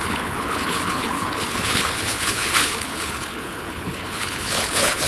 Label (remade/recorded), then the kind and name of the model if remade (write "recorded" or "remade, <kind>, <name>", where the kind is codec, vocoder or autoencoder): remade, codec, HILCodec